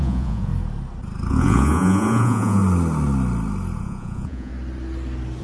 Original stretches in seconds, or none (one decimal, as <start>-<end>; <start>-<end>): 0.5-1.3; 2.6-3.8; 4.5-5.4